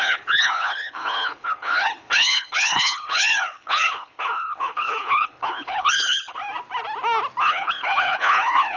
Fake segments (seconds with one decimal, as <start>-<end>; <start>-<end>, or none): 0.0-6.4; 7.4-8.8